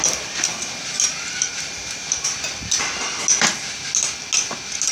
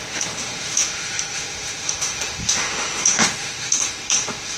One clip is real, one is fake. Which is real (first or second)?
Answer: first